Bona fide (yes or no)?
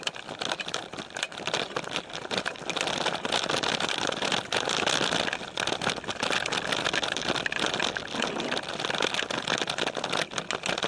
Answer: yes